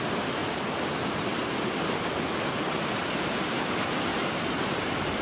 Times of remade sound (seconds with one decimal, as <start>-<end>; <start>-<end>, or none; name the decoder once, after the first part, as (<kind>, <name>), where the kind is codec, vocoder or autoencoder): none